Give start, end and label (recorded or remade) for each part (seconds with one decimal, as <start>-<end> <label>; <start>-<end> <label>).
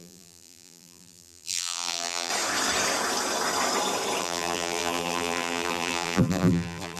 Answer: 0.0-2.3 remade; 2.3-4.2 recorded; 4.2-7.0 remade